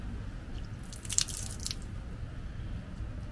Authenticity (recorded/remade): recorded